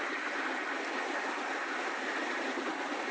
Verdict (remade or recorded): recorded